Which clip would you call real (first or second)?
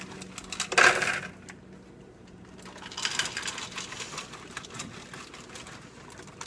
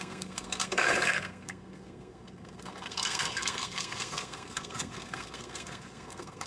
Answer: first